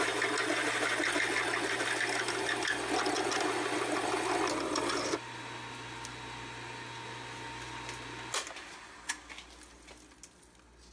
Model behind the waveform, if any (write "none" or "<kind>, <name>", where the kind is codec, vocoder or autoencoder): none